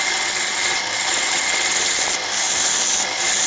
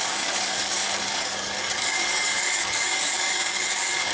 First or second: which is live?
first